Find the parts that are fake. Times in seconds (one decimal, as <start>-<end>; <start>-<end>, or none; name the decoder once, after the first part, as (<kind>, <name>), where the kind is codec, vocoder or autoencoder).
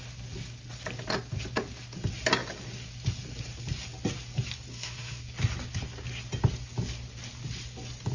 4.7-5.2 (autoencoder, DAC-VAE)